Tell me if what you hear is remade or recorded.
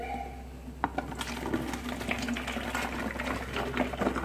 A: recorded